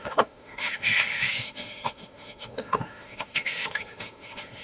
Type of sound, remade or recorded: remade